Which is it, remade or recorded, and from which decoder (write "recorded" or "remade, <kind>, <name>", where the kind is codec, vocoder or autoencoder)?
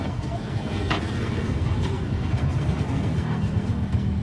remade, codec, SNAC